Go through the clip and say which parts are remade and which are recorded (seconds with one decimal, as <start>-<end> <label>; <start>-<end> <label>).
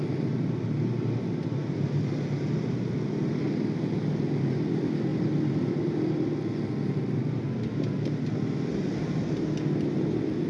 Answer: 0.0-5.1 recorded; 5.1-6.5 remade; 6.5-10.5 recorded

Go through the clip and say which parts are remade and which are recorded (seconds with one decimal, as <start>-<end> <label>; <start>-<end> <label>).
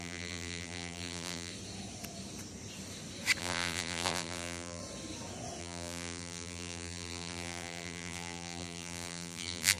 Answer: 0.0-1.5 remade; 1.5-3.4 recorded; 3.4-4.8 remade; 4.8-5.6 recorded; 5.6-9.8 remade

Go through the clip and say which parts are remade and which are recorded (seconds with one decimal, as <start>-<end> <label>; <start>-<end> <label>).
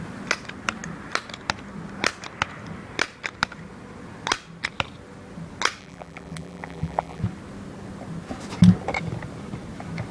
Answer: 0.0-5.8 recorded; 5.8-7.2 remade; 7.2-10.1 recorded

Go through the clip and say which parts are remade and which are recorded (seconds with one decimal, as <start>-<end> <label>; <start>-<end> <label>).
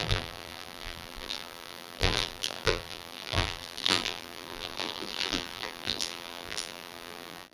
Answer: 0.0-7.5 remade